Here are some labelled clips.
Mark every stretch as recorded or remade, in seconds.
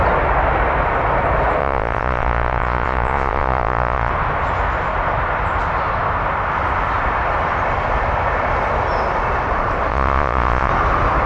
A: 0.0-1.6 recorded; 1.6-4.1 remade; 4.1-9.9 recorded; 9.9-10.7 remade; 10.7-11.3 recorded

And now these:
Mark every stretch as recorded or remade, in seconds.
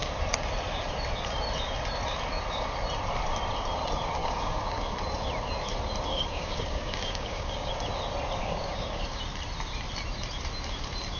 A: 0.0-4.2 recorded; 4.2-4.9 remade; 4.9-6.1 recorded; 6.1-7.7 remade; 7.7-8.4 recorded; 8.4-9.2 remade; 9.2-11.2 recorded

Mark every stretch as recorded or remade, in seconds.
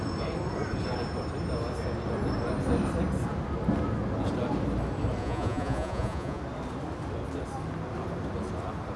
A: 0.0-5.2 recorded; 5.2-6.4 remade; 6.4-9.0 recorded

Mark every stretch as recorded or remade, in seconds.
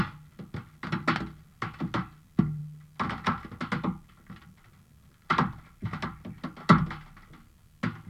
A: 0.0-8.1 recorded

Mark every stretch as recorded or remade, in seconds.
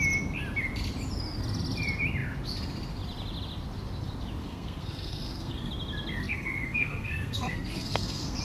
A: 0.0-4.4 recorded; 4.4-5.7 remade; 5.7-6.2 recorded; 6.2-8.4 remade